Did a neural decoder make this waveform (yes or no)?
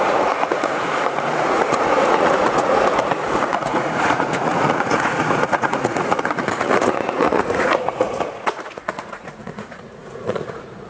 yes